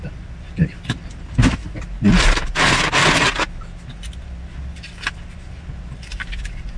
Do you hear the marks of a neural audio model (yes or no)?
yes